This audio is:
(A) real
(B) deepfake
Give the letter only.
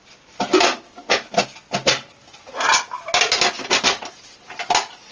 A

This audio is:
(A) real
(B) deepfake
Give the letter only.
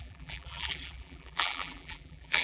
B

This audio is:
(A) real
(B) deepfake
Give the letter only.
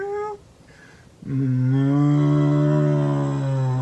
A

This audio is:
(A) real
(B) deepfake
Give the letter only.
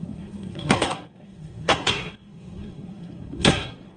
B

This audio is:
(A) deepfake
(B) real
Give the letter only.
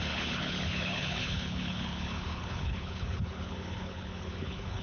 A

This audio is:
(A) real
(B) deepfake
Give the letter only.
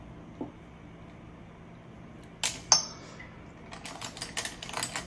A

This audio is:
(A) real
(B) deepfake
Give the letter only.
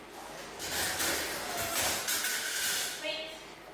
A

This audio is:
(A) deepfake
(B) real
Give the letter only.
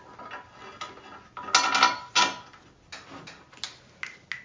B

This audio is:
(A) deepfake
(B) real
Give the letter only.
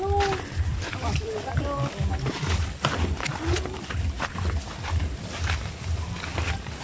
B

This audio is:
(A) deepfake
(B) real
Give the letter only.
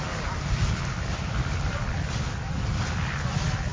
B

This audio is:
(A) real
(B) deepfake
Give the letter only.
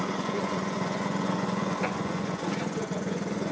B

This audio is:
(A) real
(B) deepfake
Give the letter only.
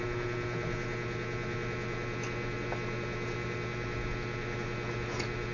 A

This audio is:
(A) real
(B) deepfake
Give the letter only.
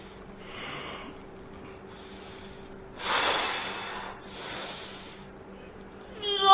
A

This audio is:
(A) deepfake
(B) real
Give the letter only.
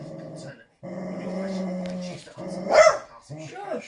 B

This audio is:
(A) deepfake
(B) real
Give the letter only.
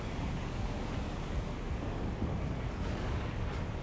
A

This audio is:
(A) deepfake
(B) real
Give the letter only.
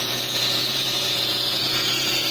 A